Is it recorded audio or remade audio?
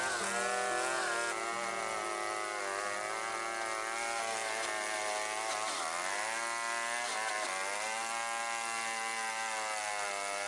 recorded